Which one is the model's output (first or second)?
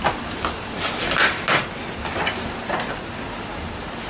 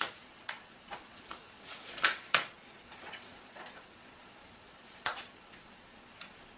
second